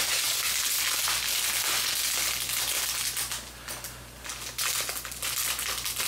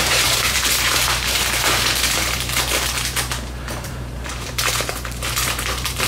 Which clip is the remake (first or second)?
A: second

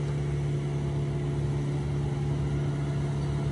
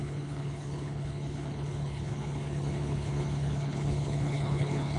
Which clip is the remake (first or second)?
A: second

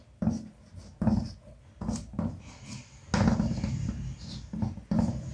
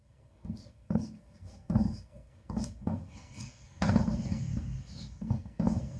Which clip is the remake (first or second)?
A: second